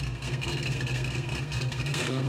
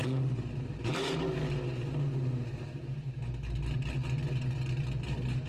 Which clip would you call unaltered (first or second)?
second